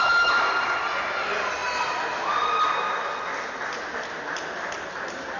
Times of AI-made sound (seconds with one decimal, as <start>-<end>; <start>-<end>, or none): none